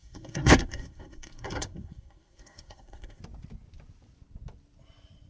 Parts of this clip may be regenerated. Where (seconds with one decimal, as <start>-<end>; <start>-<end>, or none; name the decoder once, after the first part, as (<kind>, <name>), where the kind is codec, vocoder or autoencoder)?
0.0-3.2 (codec, SNAC)